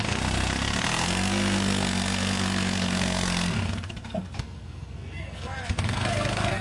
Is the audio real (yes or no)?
no